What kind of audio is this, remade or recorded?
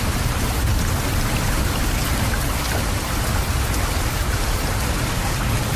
recorded